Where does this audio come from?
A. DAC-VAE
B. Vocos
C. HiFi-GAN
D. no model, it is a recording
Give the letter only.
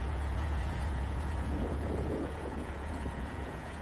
B